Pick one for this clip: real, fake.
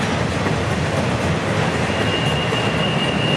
real